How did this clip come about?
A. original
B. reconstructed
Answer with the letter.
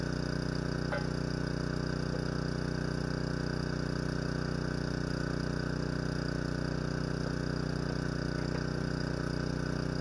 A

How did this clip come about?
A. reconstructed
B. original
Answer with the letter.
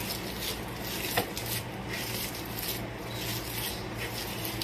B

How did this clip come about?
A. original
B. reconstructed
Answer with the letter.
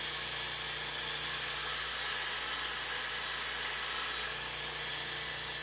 A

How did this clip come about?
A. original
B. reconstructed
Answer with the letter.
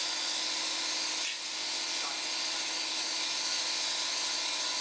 A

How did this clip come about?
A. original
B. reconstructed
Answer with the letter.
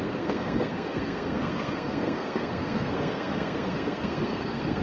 B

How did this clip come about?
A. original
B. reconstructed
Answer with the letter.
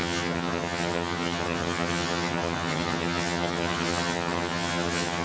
B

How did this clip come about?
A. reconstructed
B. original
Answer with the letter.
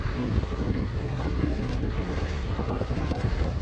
A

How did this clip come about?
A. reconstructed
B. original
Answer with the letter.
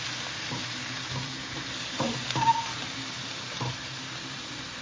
A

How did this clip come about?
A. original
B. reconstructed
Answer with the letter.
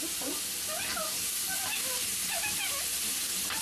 A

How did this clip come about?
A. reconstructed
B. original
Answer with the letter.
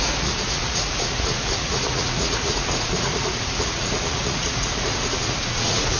A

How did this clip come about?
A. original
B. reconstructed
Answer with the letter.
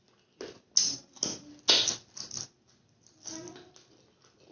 A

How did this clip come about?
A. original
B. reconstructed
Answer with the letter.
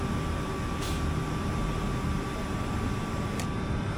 B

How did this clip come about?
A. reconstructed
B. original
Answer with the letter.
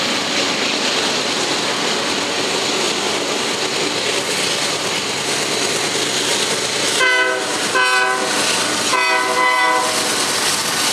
B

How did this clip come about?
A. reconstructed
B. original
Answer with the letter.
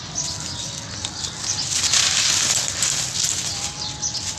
B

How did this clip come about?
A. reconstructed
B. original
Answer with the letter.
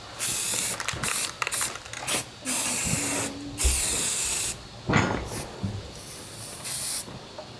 B